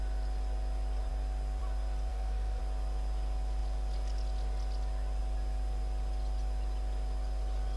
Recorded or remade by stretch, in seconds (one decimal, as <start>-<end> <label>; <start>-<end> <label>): 0.0-2.1 recorded; 2.1-2.6 remade; 2.6-7.8 recorded